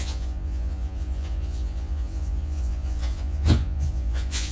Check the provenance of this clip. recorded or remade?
remade